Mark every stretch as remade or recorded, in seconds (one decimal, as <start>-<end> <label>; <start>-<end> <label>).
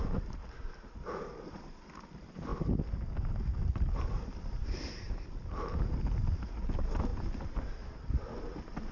0.0-8.9 recorded